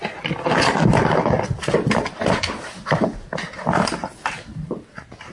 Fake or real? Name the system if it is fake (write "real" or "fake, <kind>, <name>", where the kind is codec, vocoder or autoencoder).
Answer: real